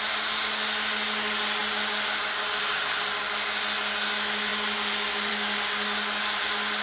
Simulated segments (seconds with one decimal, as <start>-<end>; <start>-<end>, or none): none